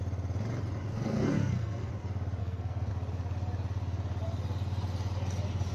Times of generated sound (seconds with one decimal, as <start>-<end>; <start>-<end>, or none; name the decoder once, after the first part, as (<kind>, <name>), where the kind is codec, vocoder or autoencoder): 0.9-1.9 (codec, SNAC); 2.4-2.9